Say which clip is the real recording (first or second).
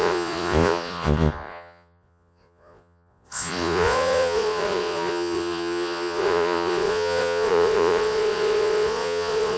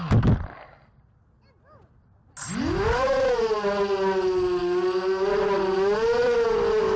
second